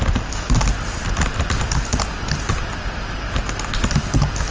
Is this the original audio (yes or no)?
yes